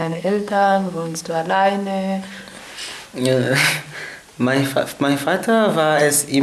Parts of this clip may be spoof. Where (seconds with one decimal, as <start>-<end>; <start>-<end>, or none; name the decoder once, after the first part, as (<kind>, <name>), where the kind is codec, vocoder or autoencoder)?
0.0-1.2 (codec, SNAC)